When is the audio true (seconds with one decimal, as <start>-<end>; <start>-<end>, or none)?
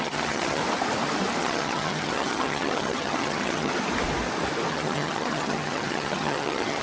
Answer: 0.6-1.4; 3.7-4.7